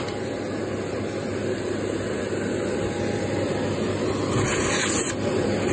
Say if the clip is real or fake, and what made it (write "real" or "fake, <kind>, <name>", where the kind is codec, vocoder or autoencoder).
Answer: real